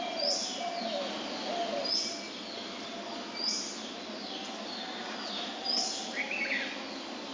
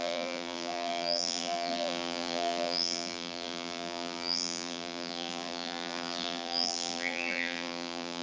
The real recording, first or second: first